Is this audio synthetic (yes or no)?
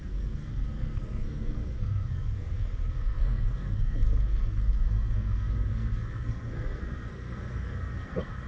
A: yes